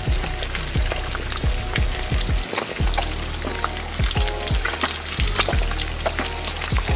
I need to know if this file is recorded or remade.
recorded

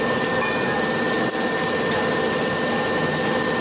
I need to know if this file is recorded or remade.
recorded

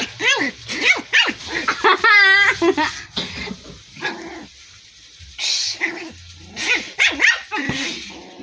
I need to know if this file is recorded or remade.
recorded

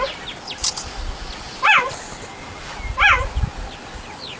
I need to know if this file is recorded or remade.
recorded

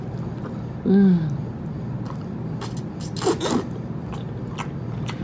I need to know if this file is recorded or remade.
recorded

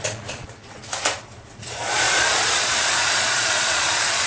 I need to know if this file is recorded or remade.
remade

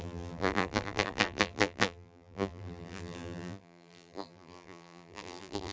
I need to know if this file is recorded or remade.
remade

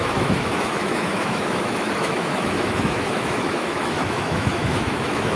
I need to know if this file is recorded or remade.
remade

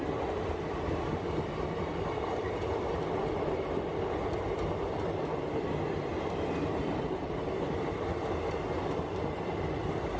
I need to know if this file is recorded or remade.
recorded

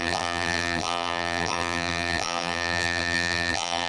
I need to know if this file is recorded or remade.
remade